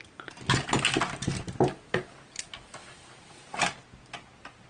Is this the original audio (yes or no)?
yes